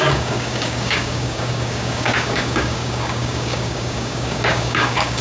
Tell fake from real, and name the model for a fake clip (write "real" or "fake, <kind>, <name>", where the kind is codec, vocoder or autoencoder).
fake, codec, DAC